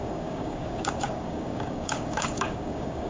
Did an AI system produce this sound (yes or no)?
yes